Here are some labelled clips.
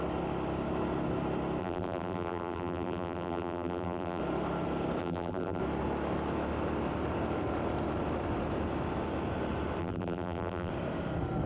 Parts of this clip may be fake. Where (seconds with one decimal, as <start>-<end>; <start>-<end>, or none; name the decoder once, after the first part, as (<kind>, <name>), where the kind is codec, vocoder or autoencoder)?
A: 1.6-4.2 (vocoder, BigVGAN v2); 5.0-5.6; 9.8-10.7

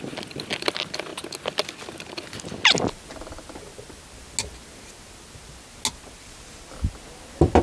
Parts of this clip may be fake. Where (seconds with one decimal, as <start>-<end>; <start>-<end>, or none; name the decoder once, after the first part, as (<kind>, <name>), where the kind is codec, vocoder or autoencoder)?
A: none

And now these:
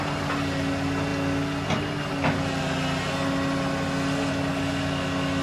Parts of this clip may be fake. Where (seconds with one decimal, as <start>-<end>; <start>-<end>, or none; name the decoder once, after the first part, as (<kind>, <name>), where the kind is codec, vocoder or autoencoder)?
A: none